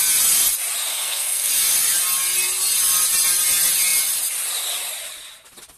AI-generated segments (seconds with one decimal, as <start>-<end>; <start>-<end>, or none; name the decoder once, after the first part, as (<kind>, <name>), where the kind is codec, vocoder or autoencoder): 0.9-1.5 (codec, SNAC)